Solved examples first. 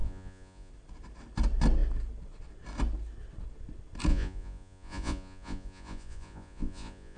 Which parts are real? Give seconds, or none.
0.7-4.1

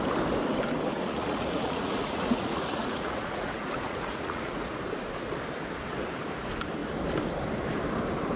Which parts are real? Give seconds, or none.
0.0-0.9; 4.8-8.4